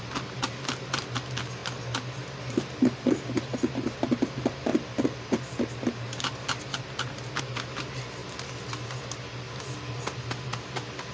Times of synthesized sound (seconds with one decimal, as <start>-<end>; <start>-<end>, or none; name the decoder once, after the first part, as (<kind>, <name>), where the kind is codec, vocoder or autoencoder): none